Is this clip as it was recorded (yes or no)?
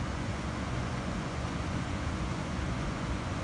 no